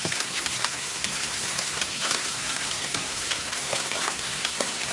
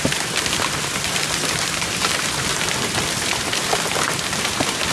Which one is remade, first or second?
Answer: first